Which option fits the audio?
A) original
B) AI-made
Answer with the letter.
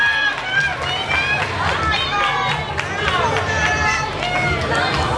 A